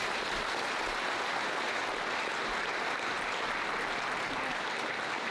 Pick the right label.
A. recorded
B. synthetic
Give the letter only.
A